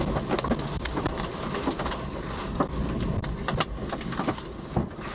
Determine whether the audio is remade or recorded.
recorded